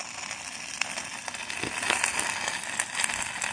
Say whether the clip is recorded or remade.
recorded